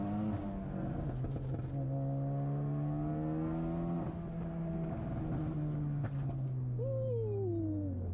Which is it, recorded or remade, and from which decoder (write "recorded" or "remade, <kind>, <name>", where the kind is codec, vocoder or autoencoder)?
recorded